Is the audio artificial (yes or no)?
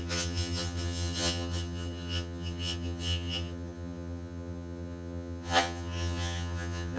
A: yes